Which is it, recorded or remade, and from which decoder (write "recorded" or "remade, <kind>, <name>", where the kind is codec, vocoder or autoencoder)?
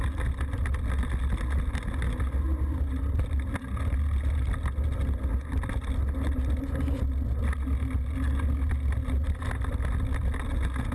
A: recorded